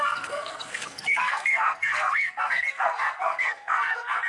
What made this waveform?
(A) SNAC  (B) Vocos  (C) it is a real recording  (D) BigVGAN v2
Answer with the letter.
A